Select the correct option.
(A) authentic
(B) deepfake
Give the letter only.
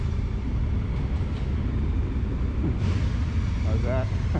B